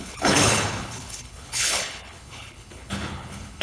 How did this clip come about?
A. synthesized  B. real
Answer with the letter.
A